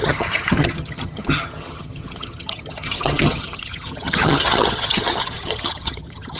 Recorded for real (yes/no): no